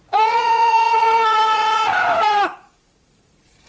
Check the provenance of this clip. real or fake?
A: fake